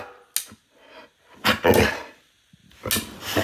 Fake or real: real